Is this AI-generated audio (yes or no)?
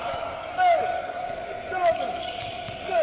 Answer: yes